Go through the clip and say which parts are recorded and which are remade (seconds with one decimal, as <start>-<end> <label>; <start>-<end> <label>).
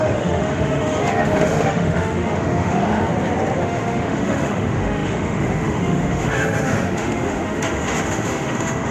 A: 0.0-3.1 remade; 3.1-3.6 recorded; 3.6-8.9 remade